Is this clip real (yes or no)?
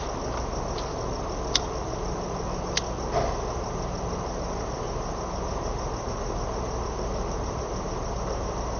yes